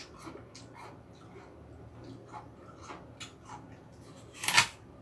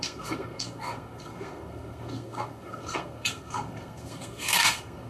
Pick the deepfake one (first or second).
second